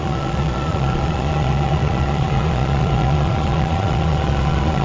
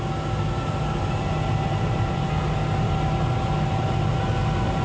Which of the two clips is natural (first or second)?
second